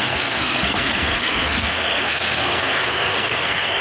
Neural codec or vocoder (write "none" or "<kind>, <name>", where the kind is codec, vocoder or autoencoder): codec, SNAC